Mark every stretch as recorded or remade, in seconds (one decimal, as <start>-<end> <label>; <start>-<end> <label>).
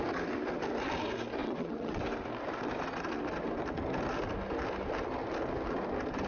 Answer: 0.0-1.4 recorded; 1.4-2.0 remade; 2.0-6.3 recorded